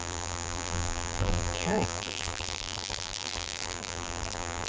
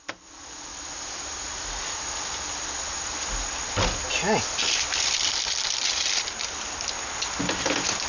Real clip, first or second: second